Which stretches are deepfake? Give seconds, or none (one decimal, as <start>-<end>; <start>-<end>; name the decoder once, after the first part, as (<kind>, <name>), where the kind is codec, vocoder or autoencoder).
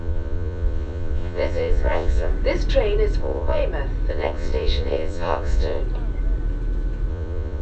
0.0-2.3 (vocoder, Vocos); 3.2-3.6; 4.1-5.8; 7.1-7.6